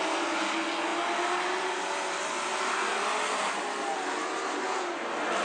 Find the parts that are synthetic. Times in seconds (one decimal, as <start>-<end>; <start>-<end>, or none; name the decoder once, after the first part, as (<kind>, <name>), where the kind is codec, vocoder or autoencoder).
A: none